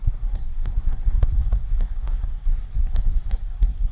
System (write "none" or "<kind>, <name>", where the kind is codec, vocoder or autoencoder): codec, SNAC